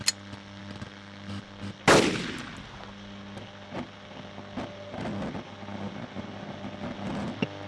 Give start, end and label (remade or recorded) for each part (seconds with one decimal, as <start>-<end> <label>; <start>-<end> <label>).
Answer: 0.0-7.7 recorded